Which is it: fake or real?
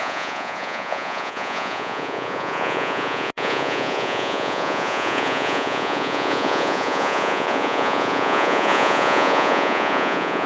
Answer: fake